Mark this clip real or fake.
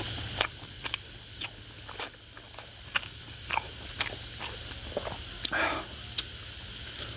real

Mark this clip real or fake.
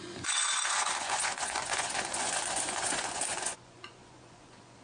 fake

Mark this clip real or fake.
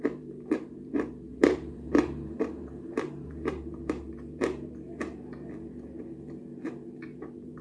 fake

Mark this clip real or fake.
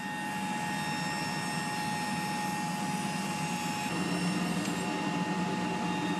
real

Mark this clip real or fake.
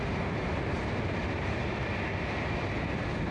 real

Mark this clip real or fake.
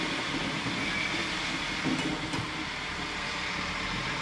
real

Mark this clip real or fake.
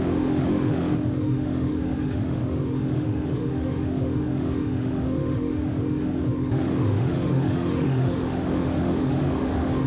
fake